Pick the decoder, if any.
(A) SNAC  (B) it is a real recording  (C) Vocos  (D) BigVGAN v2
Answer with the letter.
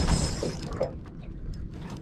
D